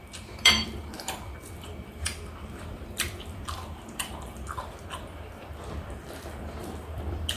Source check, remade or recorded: remade